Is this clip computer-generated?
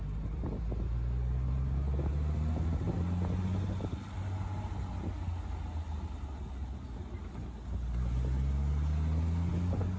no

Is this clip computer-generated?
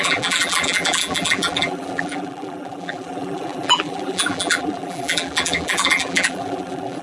yes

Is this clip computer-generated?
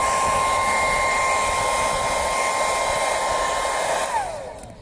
no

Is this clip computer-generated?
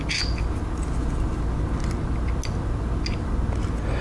no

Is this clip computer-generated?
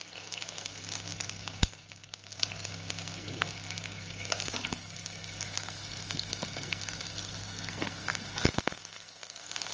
yes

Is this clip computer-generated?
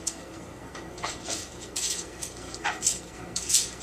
yes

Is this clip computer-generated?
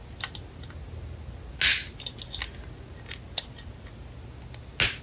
no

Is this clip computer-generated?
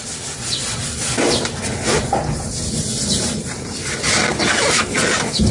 no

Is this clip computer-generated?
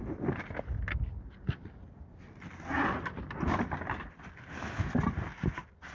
no